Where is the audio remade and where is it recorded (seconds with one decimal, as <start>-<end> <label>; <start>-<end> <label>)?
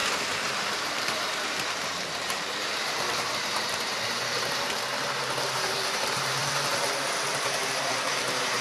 0.0-6.4 remade; 6.4-7.3 recorded; 7.3-8.6 remade